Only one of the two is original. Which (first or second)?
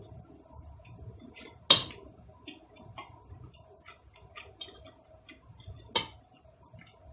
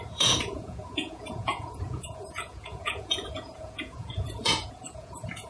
first